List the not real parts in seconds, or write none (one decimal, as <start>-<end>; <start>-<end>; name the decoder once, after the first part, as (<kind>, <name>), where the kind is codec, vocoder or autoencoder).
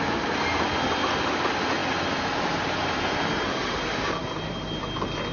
none